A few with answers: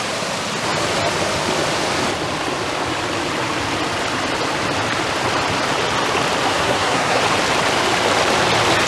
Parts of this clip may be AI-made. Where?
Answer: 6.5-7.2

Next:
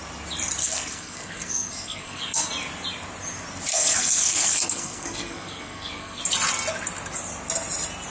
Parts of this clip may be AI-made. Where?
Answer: 0.6-2.5; 3.7-6.2

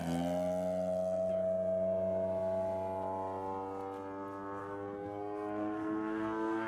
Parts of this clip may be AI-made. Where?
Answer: 4.6-6.7